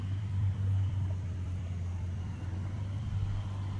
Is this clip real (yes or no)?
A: no